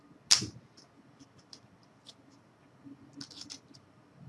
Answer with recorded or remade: recorded